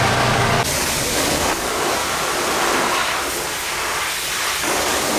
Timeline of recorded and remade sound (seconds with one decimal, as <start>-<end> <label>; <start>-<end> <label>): 0.0-2.0 remade; 2.0-4.6 recorded; 4.6-5.2 remade